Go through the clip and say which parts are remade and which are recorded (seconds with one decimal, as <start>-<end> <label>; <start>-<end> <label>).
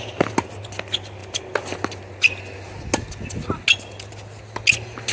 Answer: 0.0-5.1 recorded